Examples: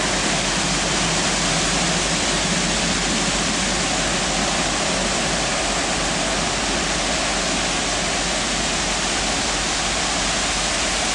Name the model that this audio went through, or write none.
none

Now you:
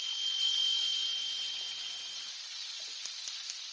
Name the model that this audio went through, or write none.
none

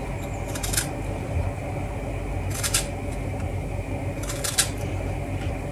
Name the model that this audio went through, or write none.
none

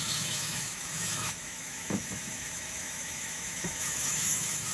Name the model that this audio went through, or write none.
autoencoder, DAC-VAE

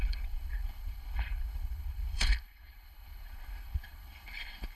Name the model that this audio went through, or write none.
codec, HILCodec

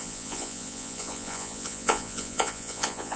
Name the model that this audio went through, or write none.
vocoder, Vocos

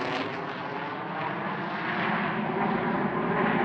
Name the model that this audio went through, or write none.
none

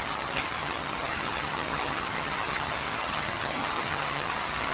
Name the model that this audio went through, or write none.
vocoder, HiFi-GAN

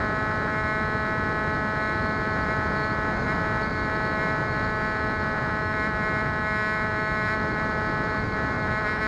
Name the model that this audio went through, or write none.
none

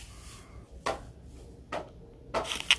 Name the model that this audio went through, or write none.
none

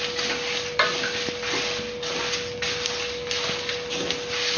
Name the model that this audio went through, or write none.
none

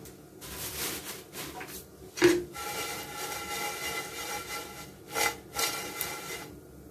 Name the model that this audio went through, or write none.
none